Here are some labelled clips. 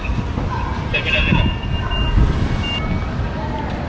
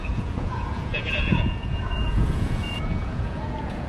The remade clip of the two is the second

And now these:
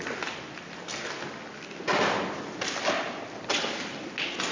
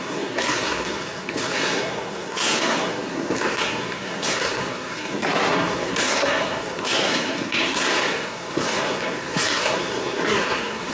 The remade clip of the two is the second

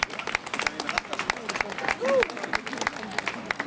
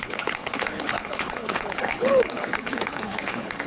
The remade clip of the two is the second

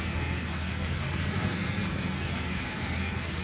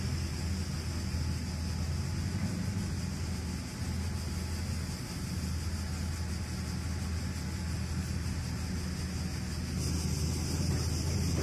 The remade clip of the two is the first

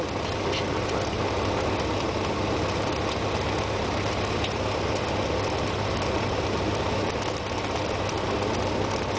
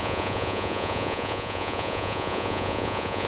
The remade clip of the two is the second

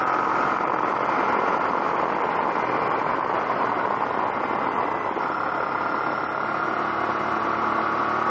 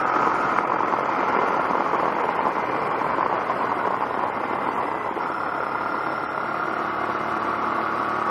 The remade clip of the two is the second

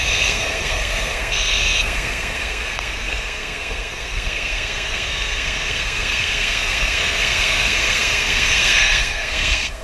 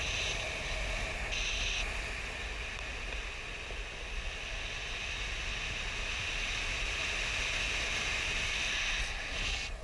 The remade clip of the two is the first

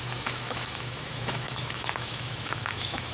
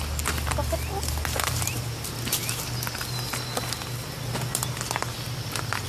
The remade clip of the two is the first